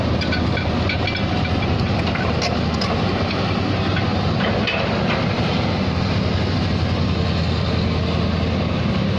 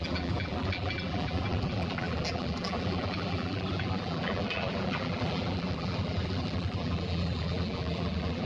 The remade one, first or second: second